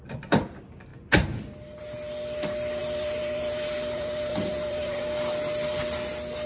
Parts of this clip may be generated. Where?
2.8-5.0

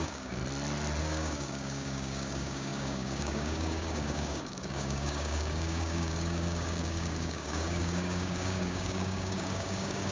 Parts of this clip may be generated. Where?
0.0-0.4; 1.0-10.1

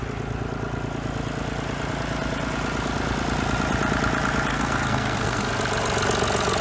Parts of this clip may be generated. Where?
4.5-5.5

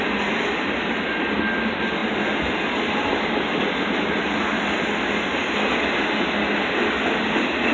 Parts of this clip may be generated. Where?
none

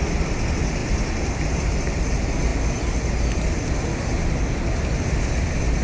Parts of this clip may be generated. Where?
0.8-1.9